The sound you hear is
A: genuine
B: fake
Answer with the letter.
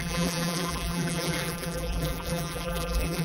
B